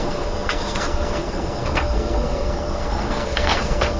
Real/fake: fake